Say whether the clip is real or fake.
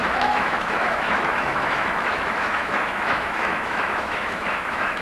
fake